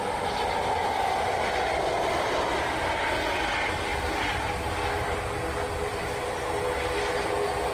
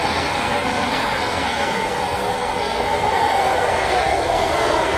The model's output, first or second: second